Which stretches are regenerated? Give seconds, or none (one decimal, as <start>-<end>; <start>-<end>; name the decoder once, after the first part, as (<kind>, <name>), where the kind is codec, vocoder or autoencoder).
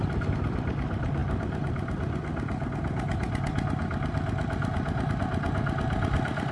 none